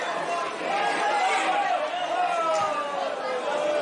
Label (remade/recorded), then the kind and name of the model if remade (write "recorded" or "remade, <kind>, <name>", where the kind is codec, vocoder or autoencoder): recorded